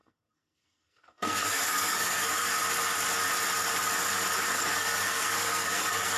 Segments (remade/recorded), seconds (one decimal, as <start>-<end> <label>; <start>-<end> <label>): 0.0-2.5 remade; 2.5-4.4 recorded; 4.4-6.2 remade